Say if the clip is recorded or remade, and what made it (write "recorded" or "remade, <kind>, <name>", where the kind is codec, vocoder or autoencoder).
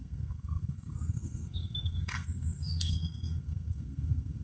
remade, codec, SNAC